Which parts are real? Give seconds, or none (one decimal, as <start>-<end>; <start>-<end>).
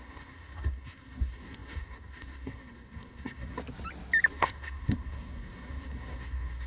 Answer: 3.6-4.3